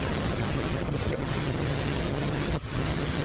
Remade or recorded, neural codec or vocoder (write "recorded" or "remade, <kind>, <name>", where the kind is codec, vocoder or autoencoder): remade, vocoder, HiFi-GAN